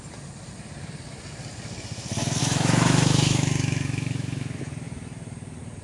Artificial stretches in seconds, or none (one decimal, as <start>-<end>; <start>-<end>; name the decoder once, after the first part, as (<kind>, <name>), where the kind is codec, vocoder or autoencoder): 2.4-4.6 (autoencoder, DAC-VAE)